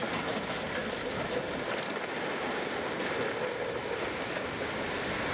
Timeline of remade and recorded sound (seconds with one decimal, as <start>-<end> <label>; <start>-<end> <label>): 0.0-5.3 recorded